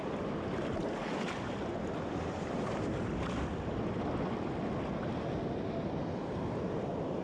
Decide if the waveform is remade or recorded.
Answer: recorded